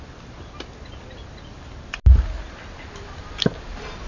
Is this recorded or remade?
recorded